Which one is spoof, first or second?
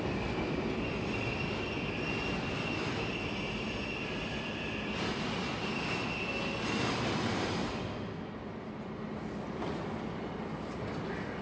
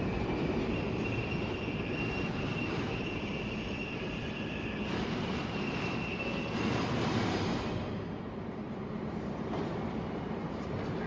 second